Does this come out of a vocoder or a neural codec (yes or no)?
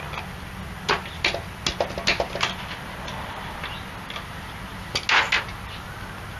no